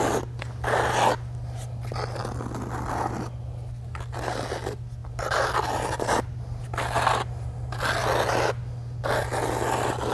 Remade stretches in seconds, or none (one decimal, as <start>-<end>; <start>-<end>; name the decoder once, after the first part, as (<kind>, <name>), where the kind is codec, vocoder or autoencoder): none